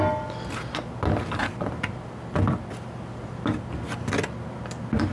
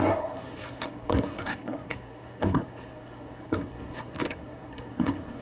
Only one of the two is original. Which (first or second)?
first